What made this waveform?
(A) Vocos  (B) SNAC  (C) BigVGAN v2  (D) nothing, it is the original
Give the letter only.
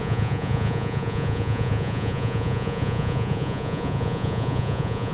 A